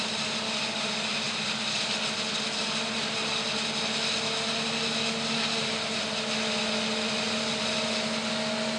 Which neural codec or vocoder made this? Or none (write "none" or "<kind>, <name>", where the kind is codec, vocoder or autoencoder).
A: none